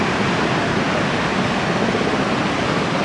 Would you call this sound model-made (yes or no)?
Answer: no